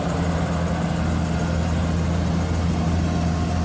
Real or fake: real